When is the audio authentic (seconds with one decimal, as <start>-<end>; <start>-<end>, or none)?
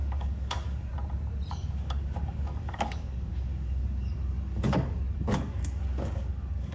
0.9-1.5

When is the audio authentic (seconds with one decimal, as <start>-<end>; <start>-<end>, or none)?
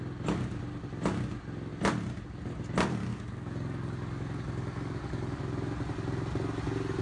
0.0-3.1; 5.4-7.0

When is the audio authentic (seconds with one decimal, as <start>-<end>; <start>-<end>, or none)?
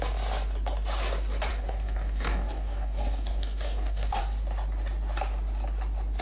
0.0-1.5; 4.2-6.2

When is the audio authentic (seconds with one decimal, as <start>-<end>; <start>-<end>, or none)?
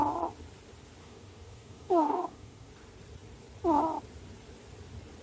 0.0-1.0; 2.7-5.2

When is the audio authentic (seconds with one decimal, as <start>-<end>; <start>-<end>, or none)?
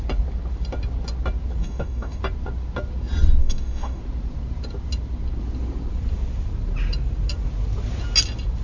0.0-1.6; 2.2-3.4; 4.0-8.6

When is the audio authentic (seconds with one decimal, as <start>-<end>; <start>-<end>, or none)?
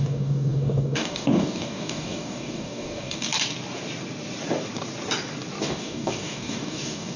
3.3-5.6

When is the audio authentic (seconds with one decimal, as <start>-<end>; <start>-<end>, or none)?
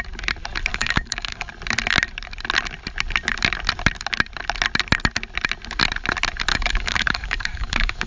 0.0-0.7; 1.5-6.5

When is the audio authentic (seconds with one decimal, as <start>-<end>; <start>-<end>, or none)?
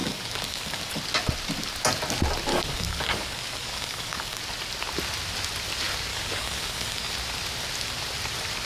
1.0-2.5; 4.4-6.1; 7.1-8.7